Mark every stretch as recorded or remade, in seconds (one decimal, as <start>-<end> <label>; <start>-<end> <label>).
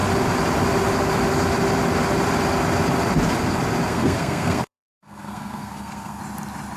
0.0-3.9 recorded; 3.9-6.2 remade; 6.2-6.8 recorded